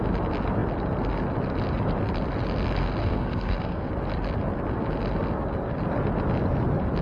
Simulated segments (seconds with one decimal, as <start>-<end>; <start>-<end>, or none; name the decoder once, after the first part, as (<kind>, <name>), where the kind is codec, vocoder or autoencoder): 3.0-3.9 (codec, SNAC)